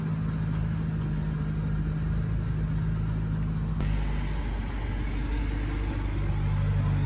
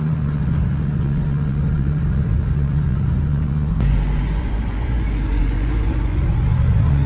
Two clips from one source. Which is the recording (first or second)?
first